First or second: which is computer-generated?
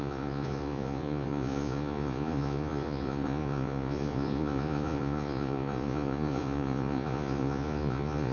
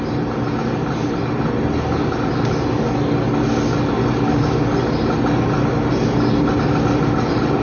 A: first